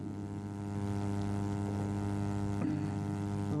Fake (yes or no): no